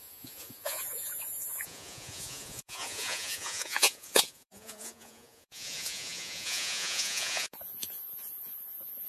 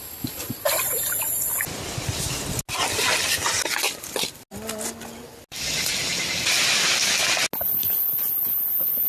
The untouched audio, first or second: second